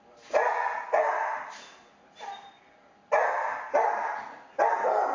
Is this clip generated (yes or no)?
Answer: no